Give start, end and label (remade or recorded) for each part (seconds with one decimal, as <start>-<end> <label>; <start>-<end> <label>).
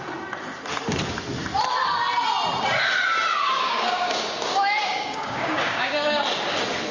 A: 0.0-3.3 recorded; 3.3-6.2 remade; 6.2-6.9 recorded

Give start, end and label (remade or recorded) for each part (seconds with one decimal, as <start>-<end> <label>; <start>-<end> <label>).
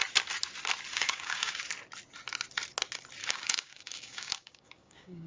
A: 0.0-0.9 recorded; 0.9-1.6 remade; 1.6-3.2 recorded; 3.2-5.3 remade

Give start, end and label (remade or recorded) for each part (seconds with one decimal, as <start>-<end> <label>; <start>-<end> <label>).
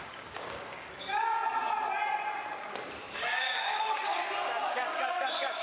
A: 0.0-1.4 remade; 1.4-3.1 recorded; 3.1-4.2 remade; 4.2-4.7 recorded; 4.7-5.6 remade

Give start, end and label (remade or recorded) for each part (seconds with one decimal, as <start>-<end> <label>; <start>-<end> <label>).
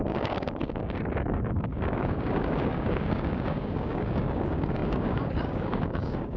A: 0.0-6.4 remade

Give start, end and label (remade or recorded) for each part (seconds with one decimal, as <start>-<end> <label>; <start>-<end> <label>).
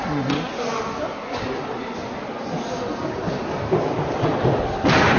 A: 0.0-5.2 recorded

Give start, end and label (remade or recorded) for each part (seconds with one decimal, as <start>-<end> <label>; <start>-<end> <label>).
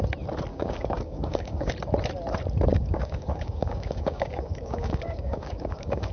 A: 0.0-0.5 recorded; 0.5-1.7 remade; 1.7-2.7 recorded; 2.7-6.1 remade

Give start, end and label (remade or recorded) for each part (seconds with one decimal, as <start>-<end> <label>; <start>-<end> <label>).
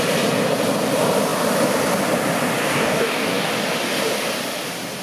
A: 0.0-2.6 recorded; 2.6-3.5 remade; 3.5-5.0 recorded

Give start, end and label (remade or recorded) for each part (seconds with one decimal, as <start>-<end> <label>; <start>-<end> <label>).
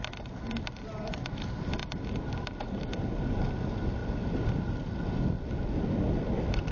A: 0.0-6.7 recorded